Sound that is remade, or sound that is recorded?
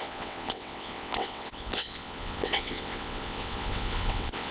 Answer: remade